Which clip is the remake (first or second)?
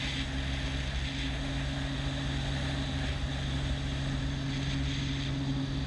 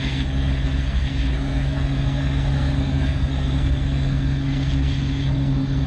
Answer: second